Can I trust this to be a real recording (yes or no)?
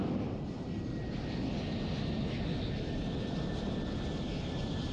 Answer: yes